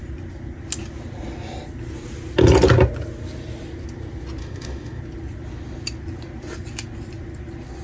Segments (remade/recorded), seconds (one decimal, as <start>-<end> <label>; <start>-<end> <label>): 0.0-4.4 recorded; 4.4-5.0 remade; 5.0-7.8 recorded